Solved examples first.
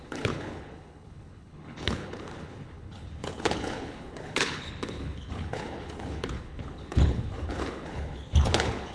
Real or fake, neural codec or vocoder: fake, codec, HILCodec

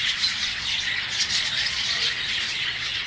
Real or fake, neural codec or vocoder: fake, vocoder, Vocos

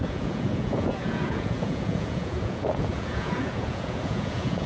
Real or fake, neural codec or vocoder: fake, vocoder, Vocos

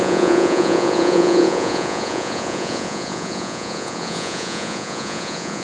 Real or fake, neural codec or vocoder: fake, vocoder, Vocos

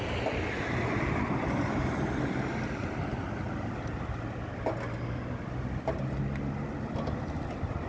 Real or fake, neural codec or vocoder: real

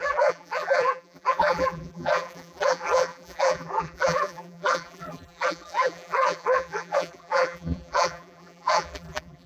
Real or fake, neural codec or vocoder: fake, vocoder, BigVGAN v2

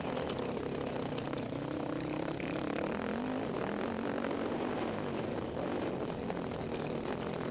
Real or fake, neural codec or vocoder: real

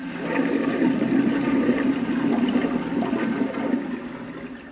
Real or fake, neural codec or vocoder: real